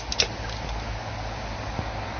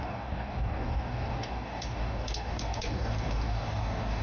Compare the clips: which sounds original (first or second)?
first